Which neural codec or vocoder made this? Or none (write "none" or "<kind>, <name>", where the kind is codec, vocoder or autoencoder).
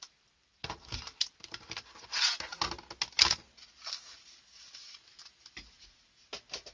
none